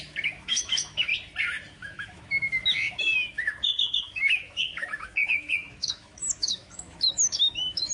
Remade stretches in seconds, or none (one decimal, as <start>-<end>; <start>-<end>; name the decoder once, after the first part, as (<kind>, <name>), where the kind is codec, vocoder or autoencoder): 0.0-1.1 (autoencoder, DAC-VAE); 1.7-7.9

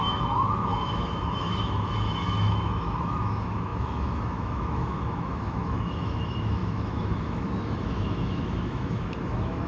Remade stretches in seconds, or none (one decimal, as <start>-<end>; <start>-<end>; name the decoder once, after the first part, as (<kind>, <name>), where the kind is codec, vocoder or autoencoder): 0.0-9.7 (autoencoder, DAC-VAE)

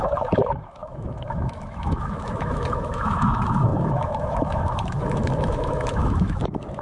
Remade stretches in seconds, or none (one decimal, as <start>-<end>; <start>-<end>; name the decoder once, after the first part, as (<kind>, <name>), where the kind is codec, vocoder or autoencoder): 0.0-6.8 (autoencoder, DAC-VAE)

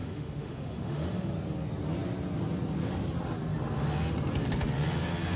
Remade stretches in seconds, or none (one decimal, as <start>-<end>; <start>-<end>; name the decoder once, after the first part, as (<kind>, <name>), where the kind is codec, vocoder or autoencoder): 0.0-1.3 (autoencoder, DAC-VAE)

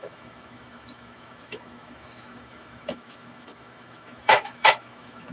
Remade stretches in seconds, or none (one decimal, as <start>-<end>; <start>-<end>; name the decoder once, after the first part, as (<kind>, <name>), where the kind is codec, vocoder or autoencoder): 0.0-5.3 (autoencoder, DAC-VAE)